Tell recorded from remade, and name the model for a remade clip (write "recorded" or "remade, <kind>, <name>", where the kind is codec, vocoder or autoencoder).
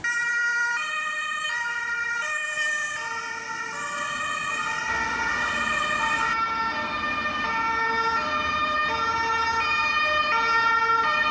recorded